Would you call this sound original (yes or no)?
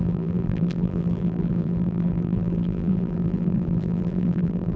no